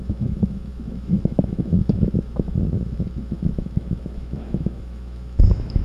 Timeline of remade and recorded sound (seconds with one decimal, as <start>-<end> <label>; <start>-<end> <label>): 0.0-5.8 remade

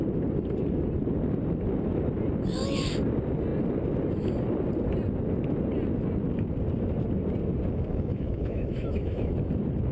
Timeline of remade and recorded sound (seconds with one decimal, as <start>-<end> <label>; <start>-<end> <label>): 0.0-7.7 recorded; 7.7-9.3 remade; 9.3-9.9 recorded